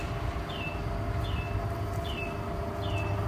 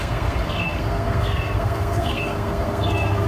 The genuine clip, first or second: first